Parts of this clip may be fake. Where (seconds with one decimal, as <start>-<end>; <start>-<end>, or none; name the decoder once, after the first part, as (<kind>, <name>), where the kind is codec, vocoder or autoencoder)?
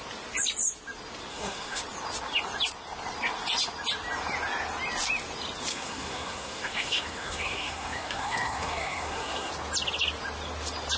1.3-1.8 (codec, SNAC); 5.7-9.5